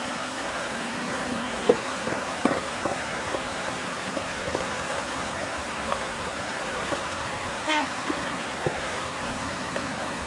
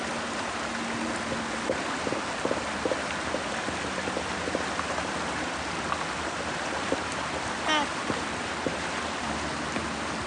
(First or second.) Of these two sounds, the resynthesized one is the first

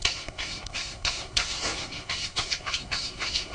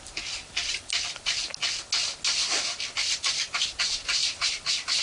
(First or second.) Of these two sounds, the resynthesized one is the first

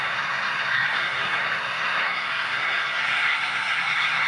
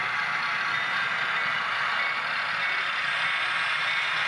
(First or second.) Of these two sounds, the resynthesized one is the first